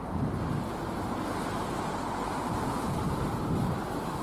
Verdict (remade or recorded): recorded